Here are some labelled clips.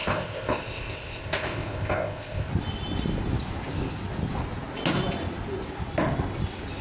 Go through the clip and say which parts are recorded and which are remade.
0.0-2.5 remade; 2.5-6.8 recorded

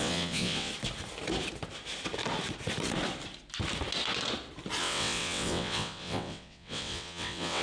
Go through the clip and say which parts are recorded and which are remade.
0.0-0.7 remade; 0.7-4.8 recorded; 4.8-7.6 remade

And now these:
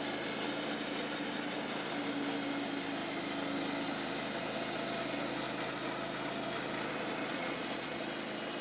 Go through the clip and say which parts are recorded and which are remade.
0.0-7.3 recorded; 7.3-8.0 remade; 8.0-8.6 recorded